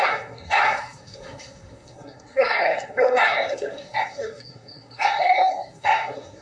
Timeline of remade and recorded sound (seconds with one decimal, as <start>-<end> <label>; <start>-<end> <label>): 0.0-6.4 remade